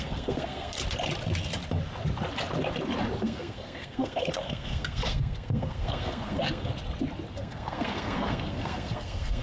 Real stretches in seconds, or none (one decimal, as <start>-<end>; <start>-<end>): 0.8-3.2; 6.7-7.3